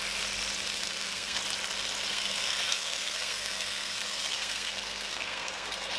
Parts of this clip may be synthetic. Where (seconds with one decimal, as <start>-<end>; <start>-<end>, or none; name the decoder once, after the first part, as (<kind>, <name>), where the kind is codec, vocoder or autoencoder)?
0.7-1.4 (codec, SNAC); 2.1-6.0